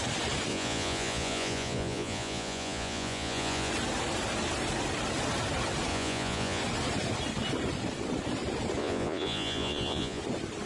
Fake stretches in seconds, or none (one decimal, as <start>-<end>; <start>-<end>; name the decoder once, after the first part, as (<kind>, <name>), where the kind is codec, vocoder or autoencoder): 0.5-3.7 (vocoder, Vocos); 5.9-6.6; 8.8-10.2